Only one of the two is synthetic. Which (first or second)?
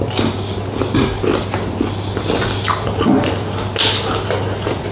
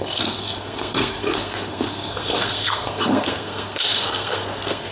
second